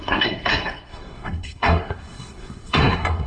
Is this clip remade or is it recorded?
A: remade